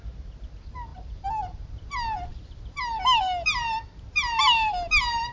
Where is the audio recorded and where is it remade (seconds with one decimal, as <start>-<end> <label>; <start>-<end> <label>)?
0.0-5.3 recorded